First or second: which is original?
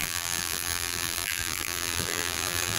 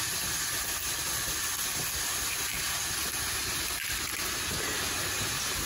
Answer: second